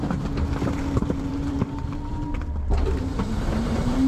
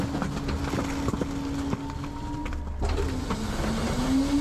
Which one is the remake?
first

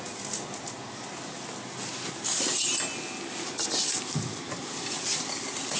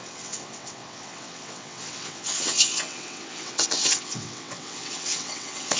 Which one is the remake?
second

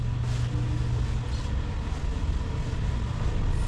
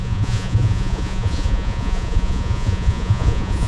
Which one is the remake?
second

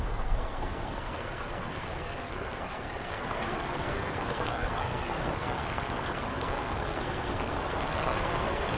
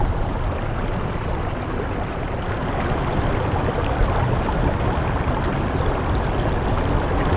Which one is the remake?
first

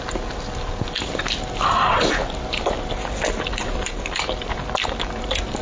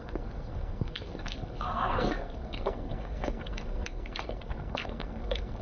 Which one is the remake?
second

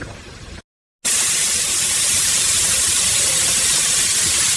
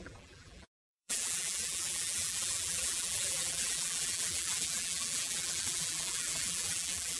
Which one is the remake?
second